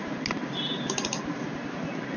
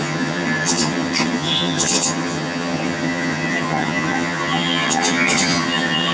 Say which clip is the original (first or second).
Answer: first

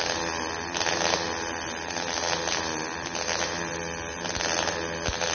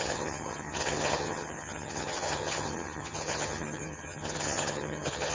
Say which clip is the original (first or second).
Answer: first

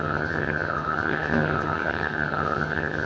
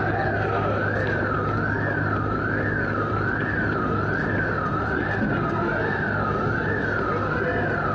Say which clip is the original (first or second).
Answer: second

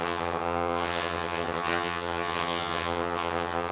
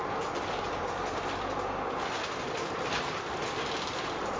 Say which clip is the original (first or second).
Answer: second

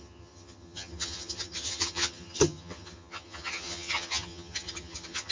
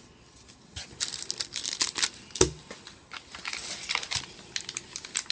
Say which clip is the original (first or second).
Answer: second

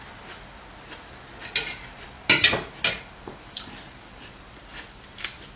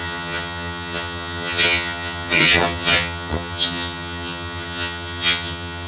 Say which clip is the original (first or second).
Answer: first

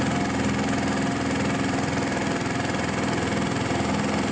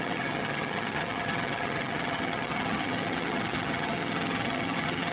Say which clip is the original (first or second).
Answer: first